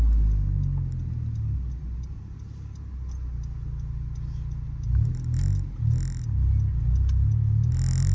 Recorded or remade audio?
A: recorded